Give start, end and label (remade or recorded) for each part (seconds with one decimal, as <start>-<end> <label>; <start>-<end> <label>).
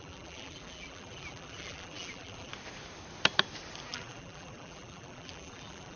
0.0-2.5 remade; 2.5-3.9 recorded; 3.9-6.0 remade